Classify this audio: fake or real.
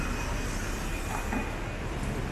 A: real